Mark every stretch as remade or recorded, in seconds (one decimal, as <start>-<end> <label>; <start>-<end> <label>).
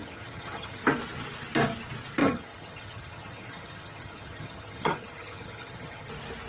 0.0-0.8 remade; 0.8-2.2 recorded; 2.2-6.1 remade; 6.1-6.5 recorded